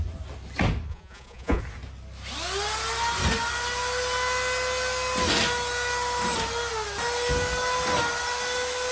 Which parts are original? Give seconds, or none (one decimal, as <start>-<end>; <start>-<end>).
0.0-0.9; 1.6-8.9